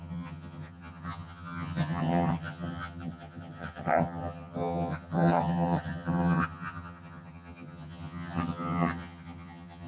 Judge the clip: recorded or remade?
remade